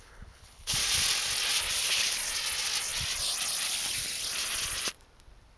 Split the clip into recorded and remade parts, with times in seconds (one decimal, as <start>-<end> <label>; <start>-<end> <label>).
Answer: 0.0-0.8 remade; 0.8-1.8 recorded; 1.8-2.2 remade; 2.2-5.6 recorded